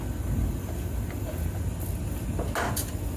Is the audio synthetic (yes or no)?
no